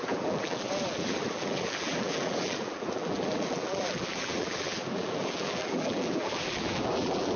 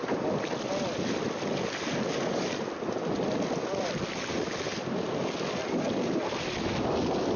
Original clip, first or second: second